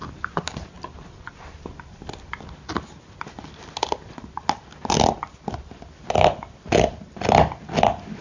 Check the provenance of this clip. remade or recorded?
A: recorded